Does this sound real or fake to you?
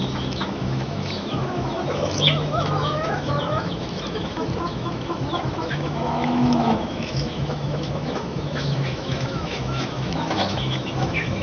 fake